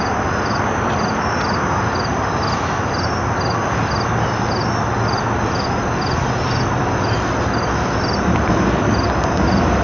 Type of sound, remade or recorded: recorded